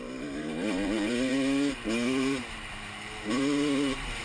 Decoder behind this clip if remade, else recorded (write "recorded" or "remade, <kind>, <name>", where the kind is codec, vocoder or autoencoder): remade, vocoder, BigVGAN v2